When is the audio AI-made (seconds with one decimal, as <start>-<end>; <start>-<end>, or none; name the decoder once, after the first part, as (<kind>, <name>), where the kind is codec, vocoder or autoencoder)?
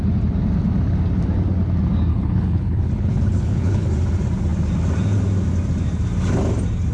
2.1-3.9 (codec, HILCodec)